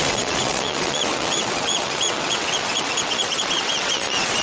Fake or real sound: fake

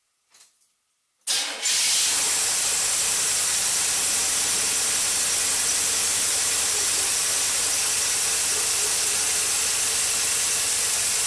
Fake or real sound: real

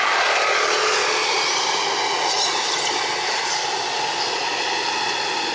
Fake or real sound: real